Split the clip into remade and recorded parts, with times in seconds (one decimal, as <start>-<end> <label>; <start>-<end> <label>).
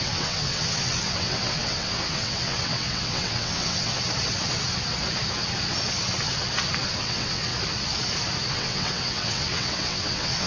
0.0-3.9 remade; 3.9-7.0 recorded; 7.0-7.5 remade; 7.5-8.5 recorded; 8.5-10.5 remade